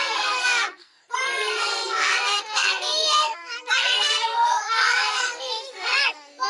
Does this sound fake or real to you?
fake